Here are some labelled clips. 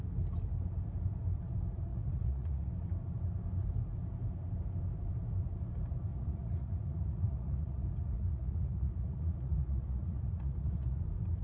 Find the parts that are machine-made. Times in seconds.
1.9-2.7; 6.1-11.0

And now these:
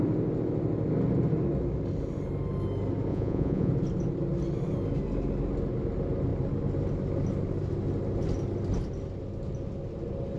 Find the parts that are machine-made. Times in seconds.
3.1-3.7

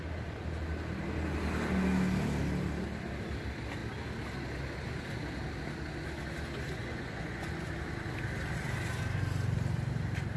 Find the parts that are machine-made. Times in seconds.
6.8-7.7